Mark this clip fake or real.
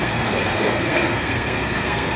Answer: fake